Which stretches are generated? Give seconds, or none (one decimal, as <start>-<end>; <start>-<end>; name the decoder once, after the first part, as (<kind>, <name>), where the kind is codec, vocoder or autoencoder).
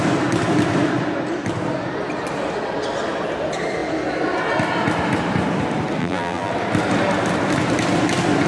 6.0-6.5 (vocoder, BigVGAN v2)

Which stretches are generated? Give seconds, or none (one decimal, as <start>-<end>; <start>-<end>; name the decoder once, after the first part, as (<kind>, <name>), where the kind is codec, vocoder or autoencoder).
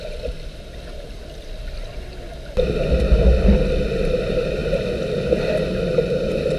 none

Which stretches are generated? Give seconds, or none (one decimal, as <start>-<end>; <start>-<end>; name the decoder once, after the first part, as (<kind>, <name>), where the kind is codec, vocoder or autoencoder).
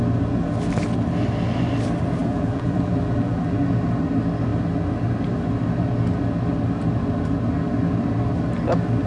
2.2-3.6 (vocoder, BigVGAN v2)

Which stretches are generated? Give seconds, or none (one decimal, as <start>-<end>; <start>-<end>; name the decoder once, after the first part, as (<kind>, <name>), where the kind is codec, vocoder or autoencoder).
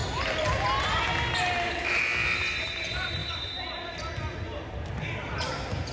2.6-3.2 (vocoder, BigVGAN v2); 4.7-5.9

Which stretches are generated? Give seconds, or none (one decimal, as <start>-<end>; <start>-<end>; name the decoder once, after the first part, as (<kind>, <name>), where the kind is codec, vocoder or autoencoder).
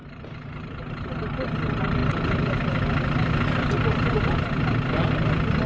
0.0-0.8 (vocoder, BigVGAN v2); 2.0-4.1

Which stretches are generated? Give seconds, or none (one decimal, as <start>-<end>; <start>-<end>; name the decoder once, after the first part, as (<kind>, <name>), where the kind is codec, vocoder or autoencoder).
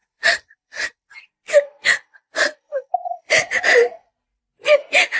0.0-1.3 (vocoder, BigVGAN v2); 3.0-4.4